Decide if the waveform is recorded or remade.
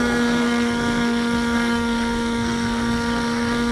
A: remade